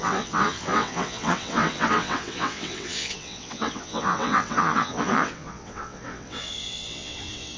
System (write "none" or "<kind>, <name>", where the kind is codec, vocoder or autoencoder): vocoder, WaveNeXt